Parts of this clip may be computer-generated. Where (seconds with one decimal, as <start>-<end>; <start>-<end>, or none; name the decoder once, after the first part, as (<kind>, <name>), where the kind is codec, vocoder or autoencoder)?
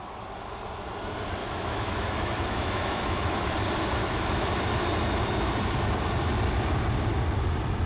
1.4-3.5 (autoencoder, DAC-VAE); 4.0-4.5